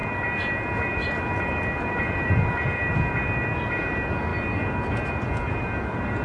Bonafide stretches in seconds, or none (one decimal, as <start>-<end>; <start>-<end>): none